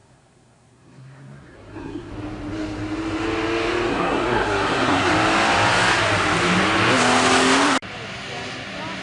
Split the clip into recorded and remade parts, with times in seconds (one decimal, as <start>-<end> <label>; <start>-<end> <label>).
0.0-2.1 remade; 2.1-3.9 recorded; 3.9-5.1 remade; 5.1-9.0 recorded